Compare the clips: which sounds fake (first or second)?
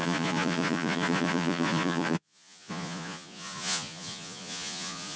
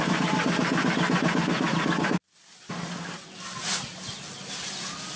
first